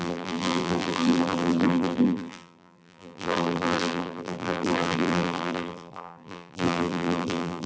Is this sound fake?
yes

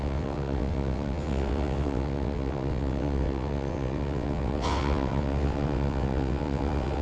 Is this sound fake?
yes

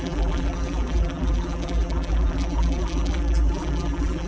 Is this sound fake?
yes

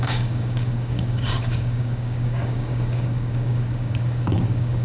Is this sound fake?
yes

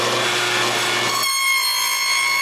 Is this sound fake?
no